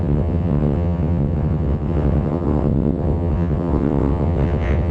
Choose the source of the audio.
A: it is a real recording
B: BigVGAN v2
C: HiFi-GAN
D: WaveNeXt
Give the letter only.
D